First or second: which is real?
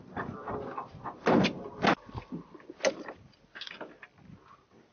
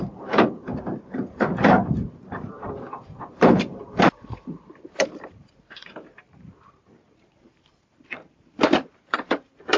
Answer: first